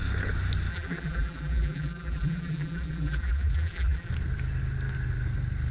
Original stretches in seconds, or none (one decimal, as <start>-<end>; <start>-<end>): 0.0-0.7; 4.1-5.7